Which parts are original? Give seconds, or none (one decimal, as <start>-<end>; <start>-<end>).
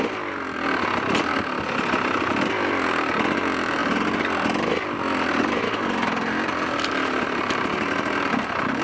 0.0-8.8